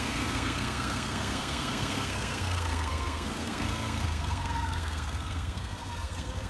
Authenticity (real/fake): fake